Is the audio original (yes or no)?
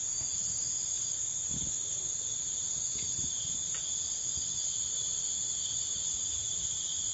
yes